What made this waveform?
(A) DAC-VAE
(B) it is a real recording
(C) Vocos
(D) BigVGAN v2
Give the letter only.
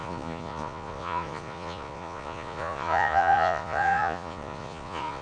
C